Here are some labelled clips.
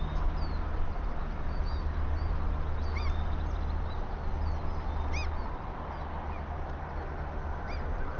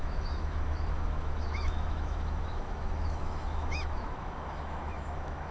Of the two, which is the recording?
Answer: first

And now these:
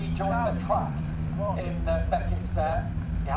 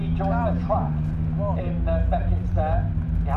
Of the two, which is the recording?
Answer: second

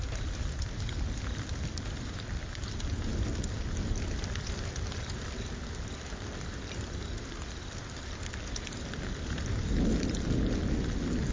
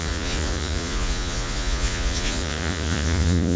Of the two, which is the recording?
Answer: first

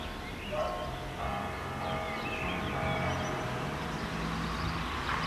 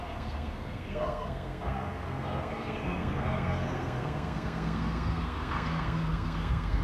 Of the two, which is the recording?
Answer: first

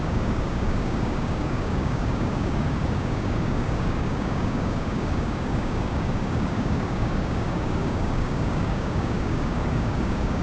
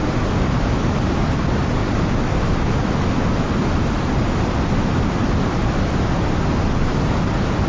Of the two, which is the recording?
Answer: second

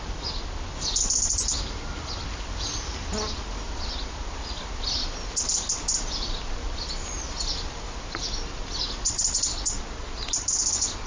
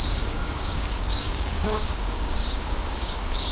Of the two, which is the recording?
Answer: first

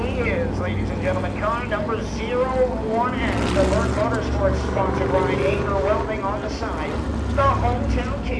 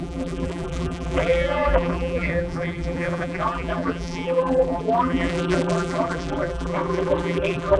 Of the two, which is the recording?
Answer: first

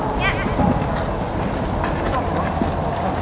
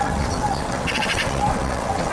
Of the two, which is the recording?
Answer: first